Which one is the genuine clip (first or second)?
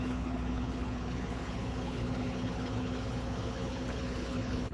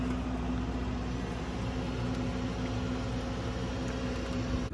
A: second